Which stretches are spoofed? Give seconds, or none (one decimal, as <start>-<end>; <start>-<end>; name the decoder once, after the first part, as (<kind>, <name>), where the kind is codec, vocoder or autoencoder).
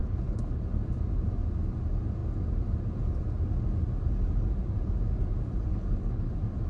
0.0-0.6 (codec, HILCodec); 5.7-6.3